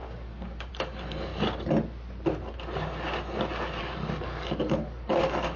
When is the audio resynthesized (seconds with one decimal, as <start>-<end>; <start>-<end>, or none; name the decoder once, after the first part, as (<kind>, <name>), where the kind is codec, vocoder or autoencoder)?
0.0-1.3 (codec, DAC); 3.8-5.6